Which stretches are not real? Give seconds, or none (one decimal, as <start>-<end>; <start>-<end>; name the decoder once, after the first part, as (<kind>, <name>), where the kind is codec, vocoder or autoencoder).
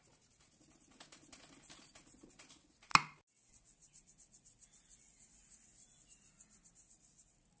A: none